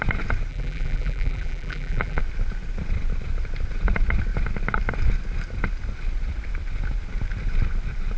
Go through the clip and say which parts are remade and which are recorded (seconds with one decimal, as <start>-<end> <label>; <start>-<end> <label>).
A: 0.0-0.5 recorded; 0.5-2.2 remade; 2.2-8.2 recorded